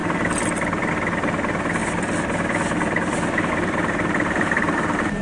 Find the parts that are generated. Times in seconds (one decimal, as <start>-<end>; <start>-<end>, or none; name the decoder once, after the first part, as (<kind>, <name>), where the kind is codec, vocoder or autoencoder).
none